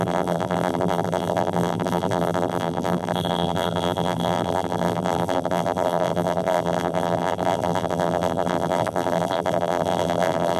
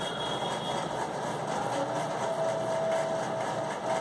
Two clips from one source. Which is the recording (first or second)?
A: second